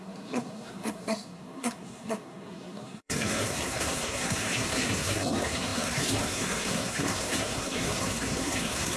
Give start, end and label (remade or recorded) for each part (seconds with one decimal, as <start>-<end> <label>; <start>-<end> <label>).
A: 0.0-9.0 remade